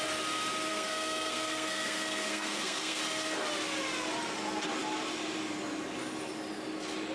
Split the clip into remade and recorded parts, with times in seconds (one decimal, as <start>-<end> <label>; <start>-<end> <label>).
0.0-0.7 recorded; 0.7-3.0 remade; 3.0-7.1 recorded